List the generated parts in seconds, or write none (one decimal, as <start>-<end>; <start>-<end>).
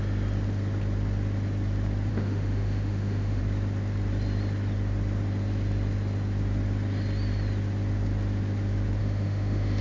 2.1-3.4; 9.0-9.8